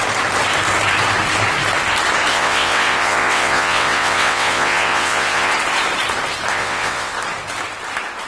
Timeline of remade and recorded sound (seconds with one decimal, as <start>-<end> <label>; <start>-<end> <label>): 0.0-2.3 recorded; 2.3-5.5 remade; 5.5-6.5 recorded; 6.5-7.1 remade; 7.1-8.3 recorded